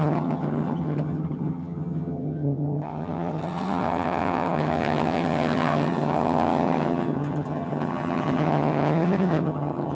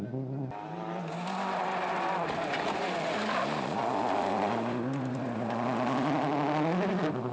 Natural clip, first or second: second